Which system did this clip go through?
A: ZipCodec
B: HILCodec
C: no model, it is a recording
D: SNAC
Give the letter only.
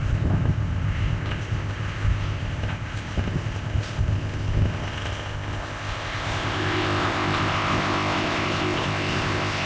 A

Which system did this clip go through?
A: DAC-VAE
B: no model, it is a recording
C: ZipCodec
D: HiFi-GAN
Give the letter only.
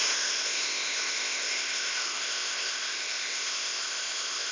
C